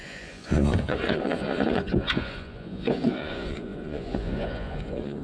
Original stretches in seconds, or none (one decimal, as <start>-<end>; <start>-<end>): none